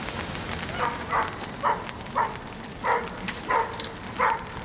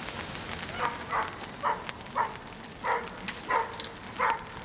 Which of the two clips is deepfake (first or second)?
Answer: first